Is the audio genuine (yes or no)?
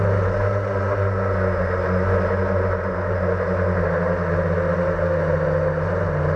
yes